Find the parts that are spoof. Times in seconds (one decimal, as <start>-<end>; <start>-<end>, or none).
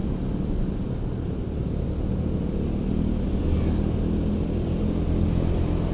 none